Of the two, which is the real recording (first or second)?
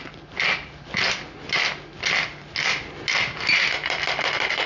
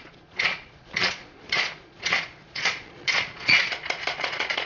first